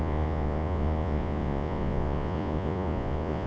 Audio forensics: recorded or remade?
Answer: remade